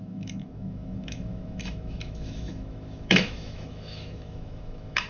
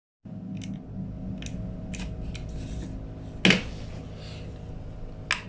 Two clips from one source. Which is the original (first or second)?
second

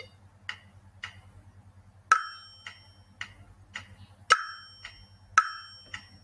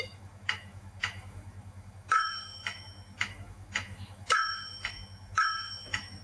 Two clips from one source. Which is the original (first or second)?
first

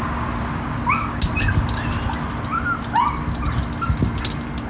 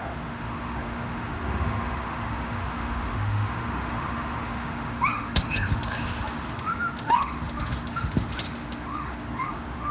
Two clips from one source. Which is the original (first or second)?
first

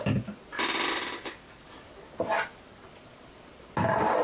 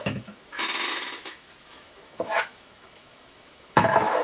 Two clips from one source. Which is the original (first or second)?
first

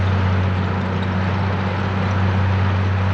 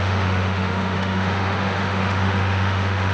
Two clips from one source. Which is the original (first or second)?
first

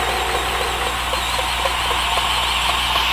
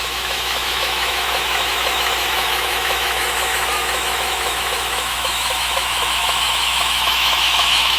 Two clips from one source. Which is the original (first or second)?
first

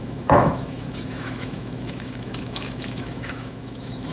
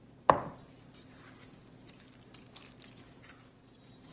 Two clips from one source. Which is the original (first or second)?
second